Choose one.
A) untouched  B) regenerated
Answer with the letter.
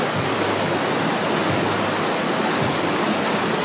A